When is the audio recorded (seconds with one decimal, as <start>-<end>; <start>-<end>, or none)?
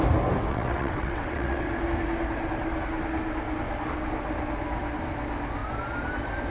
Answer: 0.0-0.5; 1.7-6.5